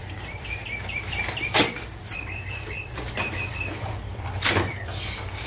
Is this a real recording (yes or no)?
no